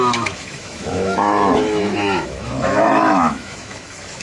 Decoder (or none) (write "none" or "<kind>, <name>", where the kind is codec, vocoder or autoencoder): autoencoder, DAC-VAE